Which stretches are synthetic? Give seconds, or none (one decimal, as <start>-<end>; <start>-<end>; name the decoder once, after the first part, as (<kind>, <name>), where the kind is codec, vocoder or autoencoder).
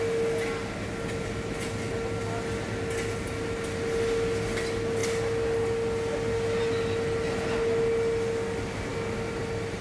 none